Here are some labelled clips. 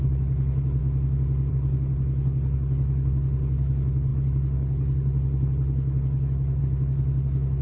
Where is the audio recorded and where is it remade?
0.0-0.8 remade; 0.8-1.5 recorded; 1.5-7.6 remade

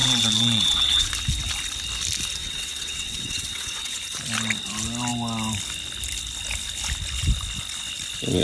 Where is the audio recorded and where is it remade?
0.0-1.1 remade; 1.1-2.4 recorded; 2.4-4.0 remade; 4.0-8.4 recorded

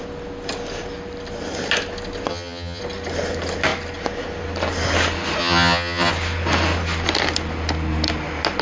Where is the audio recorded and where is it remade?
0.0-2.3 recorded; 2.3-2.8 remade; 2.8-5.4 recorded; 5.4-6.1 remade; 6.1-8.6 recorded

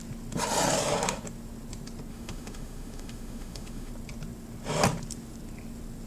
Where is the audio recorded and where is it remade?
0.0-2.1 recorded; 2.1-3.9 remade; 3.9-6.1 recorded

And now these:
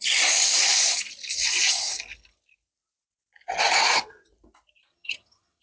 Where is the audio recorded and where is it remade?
0.0-4.9 recorded; 4.9-5.6 remade

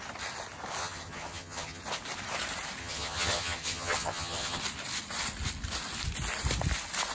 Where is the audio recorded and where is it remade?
0.0-0.8 recorded; 0.8-1.8 remade; 1.8-2.8 recorded; 2.8-4.6 remade; 4.6-7.1 recorded

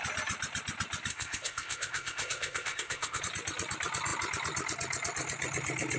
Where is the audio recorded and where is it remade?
0.0-1.1 recorded; 1.1-3.2 remade; 3.2-6.0 recorded

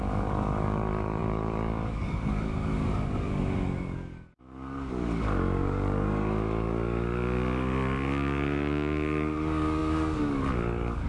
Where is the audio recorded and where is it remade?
0.0-11.1 remade